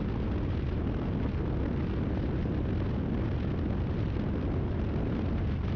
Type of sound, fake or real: real